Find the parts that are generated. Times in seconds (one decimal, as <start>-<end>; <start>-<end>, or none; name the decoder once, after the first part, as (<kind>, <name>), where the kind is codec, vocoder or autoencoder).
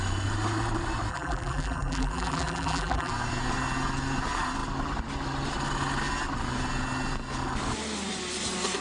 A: 1.1-3.1 (vocoder, BigVGAN v2)